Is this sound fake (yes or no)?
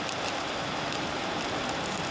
no